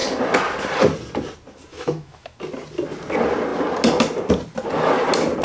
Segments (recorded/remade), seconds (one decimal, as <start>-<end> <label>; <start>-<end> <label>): 0.0-1.7 recorded; 1.7-2.4 remade; 2.4-5.4 recorded